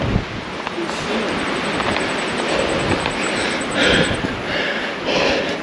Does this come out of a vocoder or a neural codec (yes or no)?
no